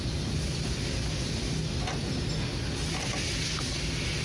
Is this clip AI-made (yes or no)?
no